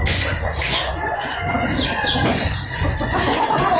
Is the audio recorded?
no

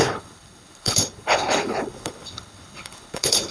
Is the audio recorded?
no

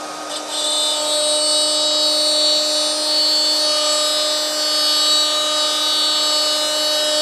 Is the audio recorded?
yes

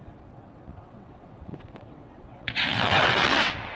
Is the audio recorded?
no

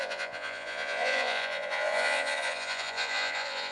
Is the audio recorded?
no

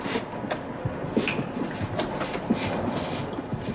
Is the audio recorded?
yes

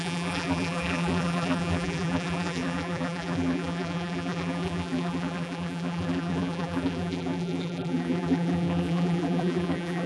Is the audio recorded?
no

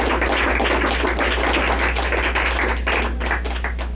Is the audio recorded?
yes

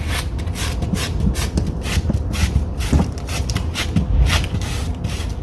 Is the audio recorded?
yes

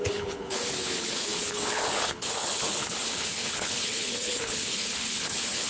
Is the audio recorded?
no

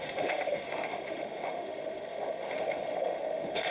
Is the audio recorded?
no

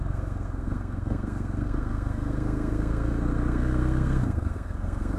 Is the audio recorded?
no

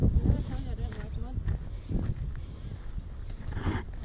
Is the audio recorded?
yes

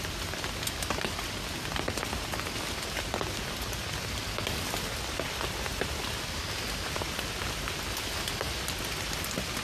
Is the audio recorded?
yes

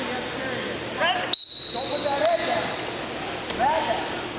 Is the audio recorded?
yes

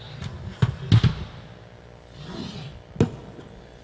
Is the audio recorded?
yes